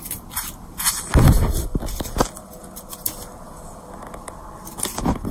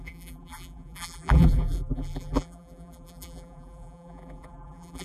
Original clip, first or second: first